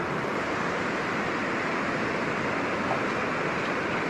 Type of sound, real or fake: real